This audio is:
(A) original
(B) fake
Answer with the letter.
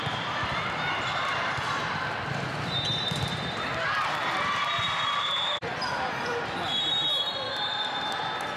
B